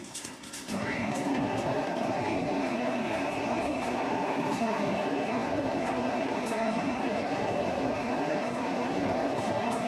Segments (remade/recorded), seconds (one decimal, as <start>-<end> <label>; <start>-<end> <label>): 0.0-9.9 remade